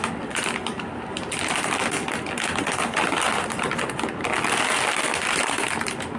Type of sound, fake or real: real